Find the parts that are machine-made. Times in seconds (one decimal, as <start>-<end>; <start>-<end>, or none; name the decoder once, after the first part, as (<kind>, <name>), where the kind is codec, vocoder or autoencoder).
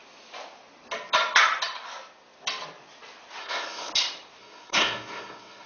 3.4-3.9 (codec, SNAC); 4.4-5.7